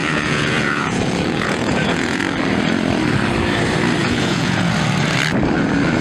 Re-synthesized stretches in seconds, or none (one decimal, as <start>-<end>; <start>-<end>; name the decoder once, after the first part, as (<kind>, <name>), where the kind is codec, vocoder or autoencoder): 0.0-2.2 (vocoder, Vocos); 4.0-4.7